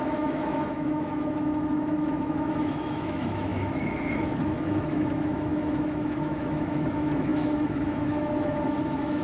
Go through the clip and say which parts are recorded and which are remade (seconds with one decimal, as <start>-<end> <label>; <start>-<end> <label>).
0.0-9.2 remade